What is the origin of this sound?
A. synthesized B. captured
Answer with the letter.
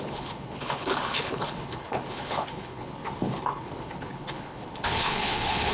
A